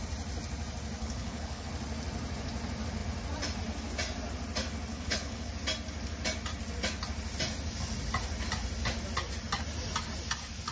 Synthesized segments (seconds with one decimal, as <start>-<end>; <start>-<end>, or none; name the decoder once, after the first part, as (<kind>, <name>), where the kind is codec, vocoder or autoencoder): 1.0-1.7 (codec, HILCodec); 4.9-5.5